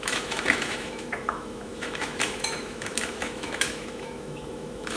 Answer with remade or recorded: remade